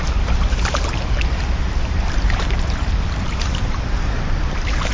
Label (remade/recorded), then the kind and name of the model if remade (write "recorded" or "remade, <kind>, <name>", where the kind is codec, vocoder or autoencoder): remade, vocoder, BigVGAN v2